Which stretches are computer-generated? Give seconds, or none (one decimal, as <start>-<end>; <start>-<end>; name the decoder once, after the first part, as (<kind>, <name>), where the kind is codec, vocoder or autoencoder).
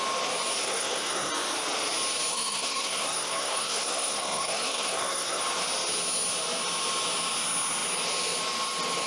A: 0.6-1.3 (codec, SNAC); 2.3-5.4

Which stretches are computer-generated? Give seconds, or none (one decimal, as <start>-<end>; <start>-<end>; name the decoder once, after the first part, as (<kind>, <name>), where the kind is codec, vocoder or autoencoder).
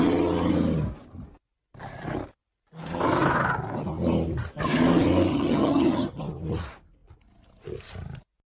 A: 5.3-6.2 (vocoder, HiFi-GAN)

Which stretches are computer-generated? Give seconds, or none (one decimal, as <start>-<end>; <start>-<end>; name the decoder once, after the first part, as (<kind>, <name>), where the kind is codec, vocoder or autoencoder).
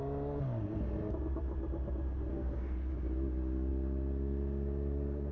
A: 2.3-2.9 (codec, SNAC)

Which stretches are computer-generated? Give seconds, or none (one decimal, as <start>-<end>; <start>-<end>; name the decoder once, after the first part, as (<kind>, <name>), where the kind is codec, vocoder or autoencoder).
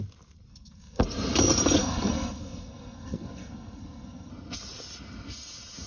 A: 0.5-1.0 (codec, SNAC); 1.8-4.3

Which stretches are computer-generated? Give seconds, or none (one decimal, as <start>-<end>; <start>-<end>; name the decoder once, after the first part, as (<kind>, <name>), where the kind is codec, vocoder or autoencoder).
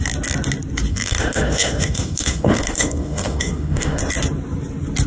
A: 0.9-4.0 (autoencoder, DAC-VAE)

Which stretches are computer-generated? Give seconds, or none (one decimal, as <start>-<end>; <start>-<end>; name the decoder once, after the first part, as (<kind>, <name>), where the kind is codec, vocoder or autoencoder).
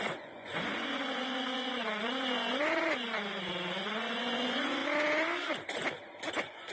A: 0.0-1.8 (vocoder, Vocos); 3.9-4.8; 6.3-6.7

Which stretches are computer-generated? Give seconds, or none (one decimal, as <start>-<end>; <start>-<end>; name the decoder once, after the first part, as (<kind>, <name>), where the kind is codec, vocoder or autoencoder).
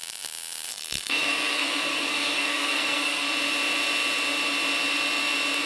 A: 0.7-3.3 (codec, SNAC)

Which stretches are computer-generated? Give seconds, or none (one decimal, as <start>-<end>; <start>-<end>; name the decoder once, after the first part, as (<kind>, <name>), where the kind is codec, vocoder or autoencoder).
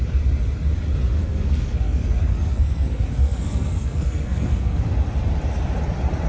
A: 1.2-4.8 (codec, SNAC)